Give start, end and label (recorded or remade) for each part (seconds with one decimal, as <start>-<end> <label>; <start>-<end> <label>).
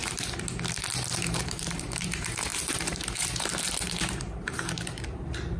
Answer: 0.0-1.2 recorded; 1.2-5.6 remade